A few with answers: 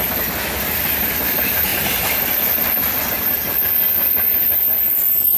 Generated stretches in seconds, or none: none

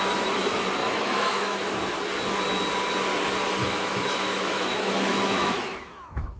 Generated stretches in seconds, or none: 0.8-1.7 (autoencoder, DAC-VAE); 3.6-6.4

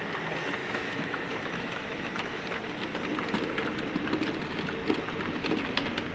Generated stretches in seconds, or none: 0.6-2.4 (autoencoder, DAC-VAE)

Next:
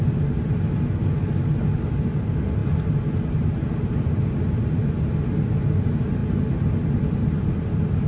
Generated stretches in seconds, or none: none

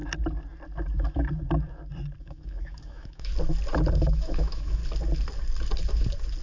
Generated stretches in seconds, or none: 2.2-3.3 (autoencoder, DAC-VAE); 3.9-4.8